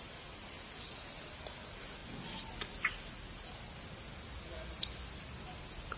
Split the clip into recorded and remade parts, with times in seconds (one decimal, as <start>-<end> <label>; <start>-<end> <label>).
0.0-6.0 recorded